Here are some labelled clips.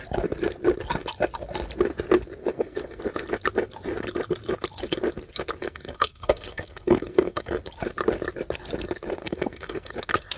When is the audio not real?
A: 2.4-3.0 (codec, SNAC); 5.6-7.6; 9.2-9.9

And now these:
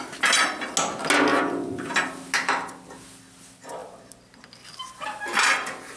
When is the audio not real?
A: 1.3-1.9 (vocoder, Vocos)